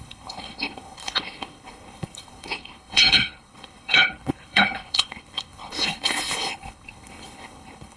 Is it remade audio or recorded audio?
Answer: remade